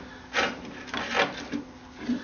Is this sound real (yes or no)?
yes